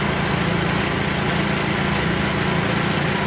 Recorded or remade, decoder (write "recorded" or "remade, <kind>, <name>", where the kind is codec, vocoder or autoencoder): recorded